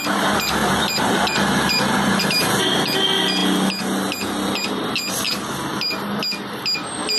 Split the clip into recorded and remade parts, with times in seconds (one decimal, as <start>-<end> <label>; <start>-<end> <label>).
0.0-0.6 recorded; 0.6-2.6 remade; 2.6-5.3 recorded; 5.3-6.2 remade; 6.2-7.2 recorded

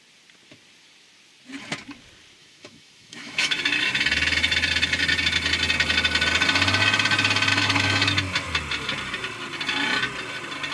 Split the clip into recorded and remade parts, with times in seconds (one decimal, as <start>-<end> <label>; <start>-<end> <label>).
0.0-2.4 recorded; 2.4-3.6 remade; 3.6-7.5 recorded; 7.5-8.1 remade; 8.1-10.7 recorded

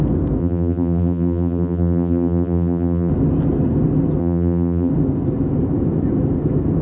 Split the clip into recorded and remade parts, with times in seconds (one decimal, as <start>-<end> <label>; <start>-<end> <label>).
0.0-0.4 recorded; 0.4-3.1 remade; 3.1-4.2 recorded; 4.2-4.9 remade; 4.9-6.8 recorded